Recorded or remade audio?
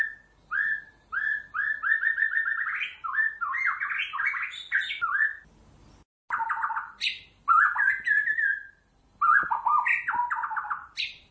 recorded